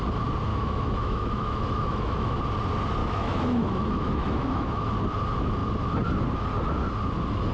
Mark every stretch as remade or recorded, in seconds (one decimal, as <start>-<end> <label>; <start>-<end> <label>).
0.0-0.5 recorded; 0.5-2.4 remade; 2.4-3.0 recorded; 3.0-4.9 remade; 4.9-7.5 recorded